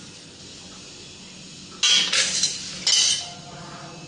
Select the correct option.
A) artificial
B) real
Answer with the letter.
B